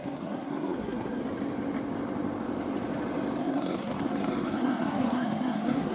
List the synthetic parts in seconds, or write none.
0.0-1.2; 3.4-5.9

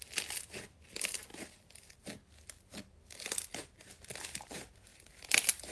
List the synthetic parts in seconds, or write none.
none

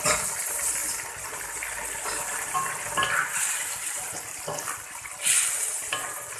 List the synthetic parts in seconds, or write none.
none

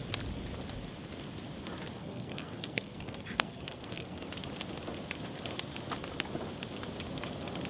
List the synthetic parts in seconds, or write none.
2.0-4.3